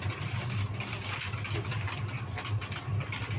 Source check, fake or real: real